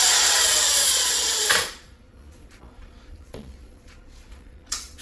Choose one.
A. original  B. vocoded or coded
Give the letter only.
B